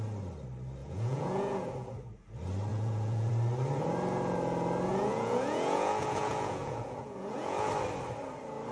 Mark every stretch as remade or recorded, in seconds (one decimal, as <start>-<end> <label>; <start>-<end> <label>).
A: 0.0-0.8 recorded; 0.8-1.7 remade; 1.7-2.7 recorded; 2.7-3.3 remade; 3.3-4.9 recorded; 4.9-7.7 remade; 7.7-8.7 recorded